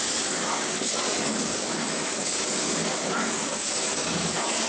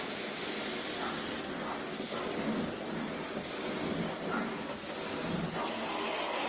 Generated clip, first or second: first